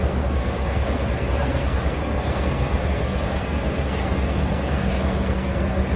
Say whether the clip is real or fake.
fake